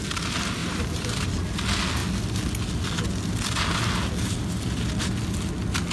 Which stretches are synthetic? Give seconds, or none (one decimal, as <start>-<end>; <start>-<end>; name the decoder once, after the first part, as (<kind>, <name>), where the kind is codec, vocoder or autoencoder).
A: 0.6-1.3 (vocoder, BigVGAN v2)